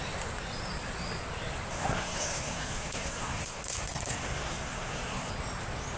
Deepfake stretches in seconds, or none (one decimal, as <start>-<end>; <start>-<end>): 1.7-5.3